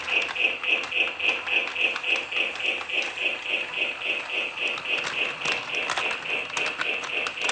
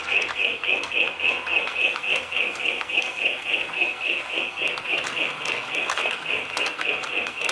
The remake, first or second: second